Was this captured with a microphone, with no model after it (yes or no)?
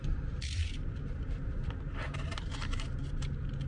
no